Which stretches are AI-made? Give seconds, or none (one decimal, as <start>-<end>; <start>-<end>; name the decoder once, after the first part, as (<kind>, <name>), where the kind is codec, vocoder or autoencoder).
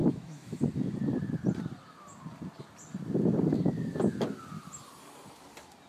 0.0-0.6 (autoencoder, DAC-VAE)